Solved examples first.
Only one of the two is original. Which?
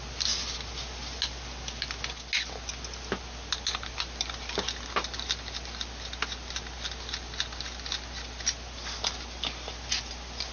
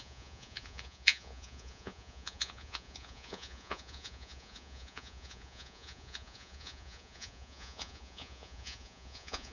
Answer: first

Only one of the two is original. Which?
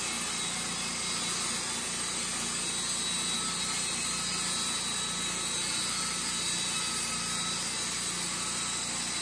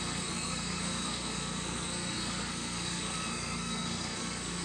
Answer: first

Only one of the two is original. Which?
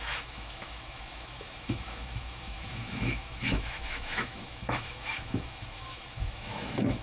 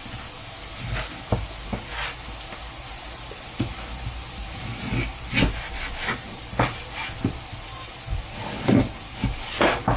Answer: second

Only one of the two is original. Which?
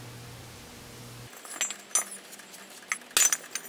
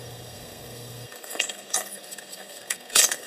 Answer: first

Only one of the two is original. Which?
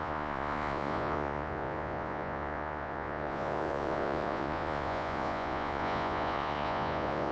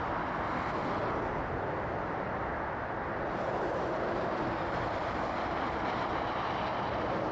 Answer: second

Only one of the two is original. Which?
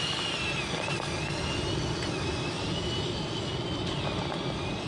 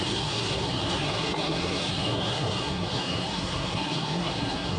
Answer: first